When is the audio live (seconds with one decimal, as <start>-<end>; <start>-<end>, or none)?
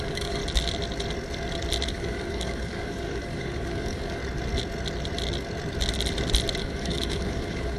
0.4-1.9; 4.2-6.6